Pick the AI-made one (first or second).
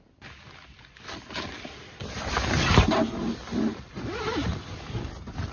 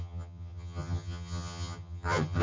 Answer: second